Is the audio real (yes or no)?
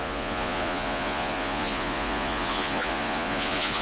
no